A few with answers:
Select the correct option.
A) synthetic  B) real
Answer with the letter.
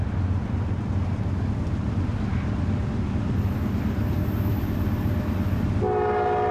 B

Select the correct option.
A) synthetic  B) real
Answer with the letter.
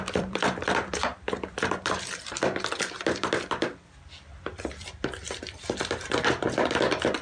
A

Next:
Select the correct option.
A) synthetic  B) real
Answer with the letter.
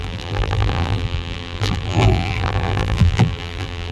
A